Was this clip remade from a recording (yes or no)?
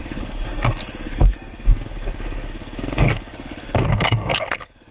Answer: yes